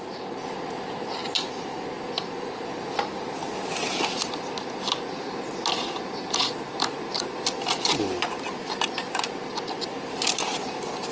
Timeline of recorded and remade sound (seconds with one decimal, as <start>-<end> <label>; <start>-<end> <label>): 0.0-11.1 recorded